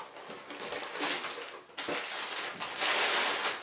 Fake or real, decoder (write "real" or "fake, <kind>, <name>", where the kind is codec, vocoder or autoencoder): real